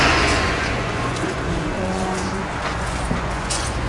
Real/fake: fake